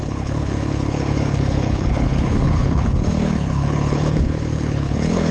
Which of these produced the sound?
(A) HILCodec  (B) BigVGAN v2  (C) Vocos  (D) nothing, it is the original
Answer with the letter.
A